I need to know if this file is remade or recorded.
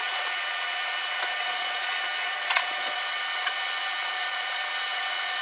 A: remade